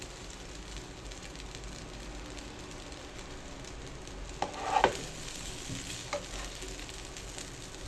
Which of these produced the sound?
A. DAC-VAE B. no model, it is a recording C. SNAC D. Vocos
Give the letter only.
B